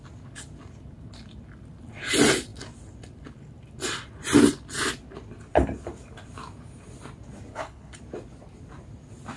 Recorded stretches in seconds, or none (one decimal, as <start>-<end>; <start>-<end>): 0.0-7.5; 8.0-9.4